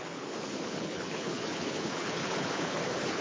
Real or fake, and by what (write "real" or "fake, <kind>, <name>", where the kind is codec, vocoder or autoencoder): fake, codec, HILCodec